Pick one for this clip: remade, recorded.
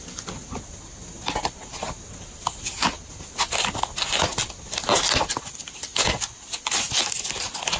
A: recorded